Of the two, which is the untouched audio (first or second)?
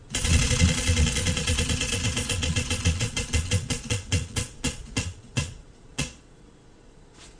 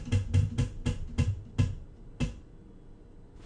second